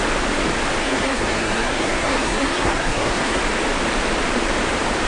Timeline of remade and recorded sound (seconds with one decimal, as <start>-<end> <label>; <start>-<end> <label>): 0.0-0.8 recorded; 0.8-3.4 remade; 3.4-5.1 recorded